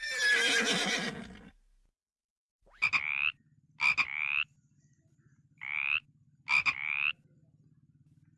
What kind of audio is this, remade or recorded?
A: recorded